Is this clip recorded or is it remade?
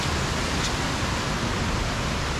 recorded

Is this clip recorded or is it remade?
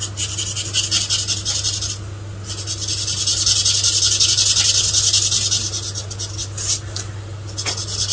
recorded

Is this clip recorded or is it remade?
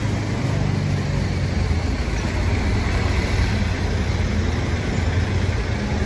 recorded